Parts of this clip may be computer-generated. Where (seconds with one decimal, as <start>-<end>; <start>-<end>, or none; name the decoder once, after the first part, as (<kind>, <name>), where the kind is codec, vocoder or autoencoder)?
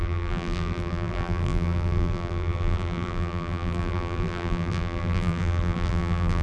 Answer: 0.0-6.4 (vocoder, BigVGAN v2)